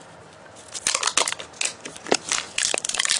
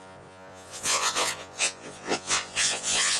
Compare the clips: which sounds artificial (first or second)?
second